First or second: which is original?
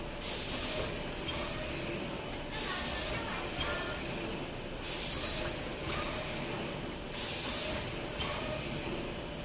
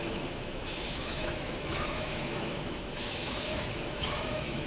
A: first